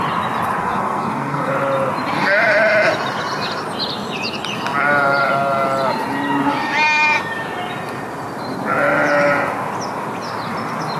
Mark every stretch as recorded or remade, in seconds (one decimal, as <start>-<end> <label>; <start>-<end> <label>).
0.0-0.6 recorded; 0.6-1.5 remade; 1.5-11.0 recorded

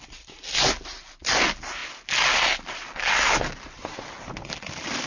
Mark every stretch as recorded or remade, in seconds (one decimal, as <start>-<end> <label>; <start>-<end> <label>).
0.0-5.1 recorded

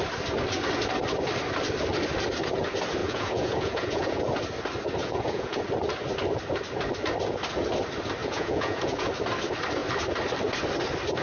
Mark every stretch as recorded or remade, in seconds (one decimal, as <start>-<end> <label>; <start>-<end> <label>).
0.0-3.0 recorded; 3.0-4.2 remade; 4.2-5.0 recorded; 5.0-5.6 remade; 5.6-8.2 recorded; 8.2-9.1 remade; 9.1-11.2 recorded

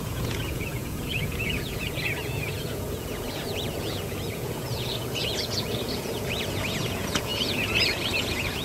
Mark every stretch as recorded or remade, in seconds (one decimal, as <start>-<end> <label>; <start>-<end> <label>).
0.0-8.6 remade

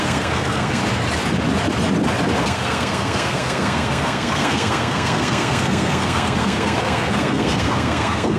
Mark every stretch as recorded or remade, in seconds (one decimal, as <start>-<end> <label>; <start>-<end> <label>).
0.0-0.8 remade; 0.8-2.4 recorded; 2.4-8.4 remade

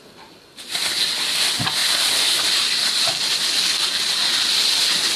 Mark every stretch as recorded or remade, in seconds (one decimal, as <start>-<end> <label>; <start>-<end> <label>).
0.0-5.2 recorded